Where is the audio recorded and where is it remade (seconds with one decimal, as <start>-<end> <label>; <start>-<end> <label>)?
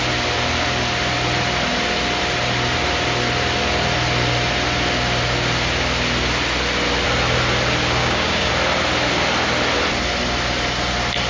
0.0-8.0 recorded; 8.0-8.5 remade; 8.5-11.3 recorded